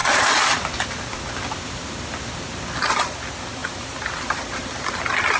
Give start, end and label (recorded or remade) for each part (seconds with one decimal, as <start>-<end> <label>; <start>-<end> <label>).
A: 0.0-2.3 remade; 2.3-3.6 recorded; 3.6-4.8 remade; 4.8-5.4 recorded